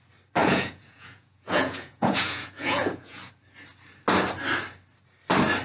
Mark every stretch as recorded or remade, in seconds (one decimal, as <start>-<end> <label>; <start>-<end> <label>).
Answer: 0.0-0.4 recorded; 0.4-3.3 remade; 3.3-5.6 recorded